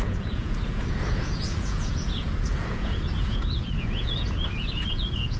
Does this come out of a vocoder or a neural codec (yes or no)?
yes